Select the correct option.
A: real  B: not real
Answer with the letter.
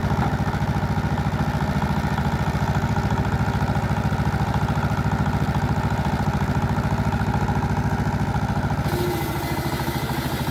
A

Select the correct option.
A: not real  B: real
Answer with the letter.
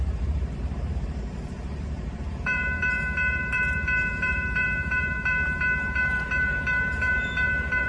A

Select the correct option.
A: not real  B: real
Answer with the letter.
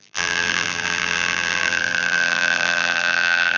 A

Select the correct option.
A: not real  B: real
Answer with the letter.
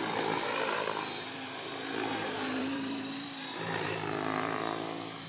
A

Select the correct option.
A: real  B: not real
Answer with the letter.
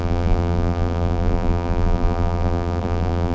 B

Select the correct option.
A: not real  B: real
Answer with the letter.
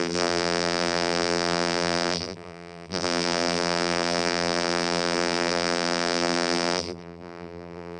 A